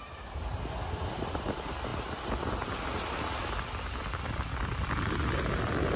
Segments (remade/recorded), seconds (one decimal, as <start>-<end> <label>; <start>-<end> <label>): 0.0-6.0 recorded